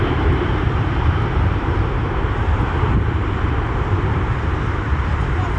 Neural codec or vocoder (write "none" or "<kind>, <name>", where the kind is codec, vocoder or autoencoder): vocoder, BigVGAN v2